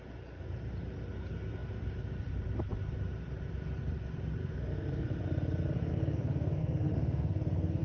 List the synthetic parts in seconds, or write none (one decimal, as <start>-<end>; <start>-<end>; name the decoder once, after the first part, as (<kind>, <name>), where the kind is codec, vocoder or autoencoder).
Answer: 4.4-5.2 (codec, SNAC); 5.9-7.8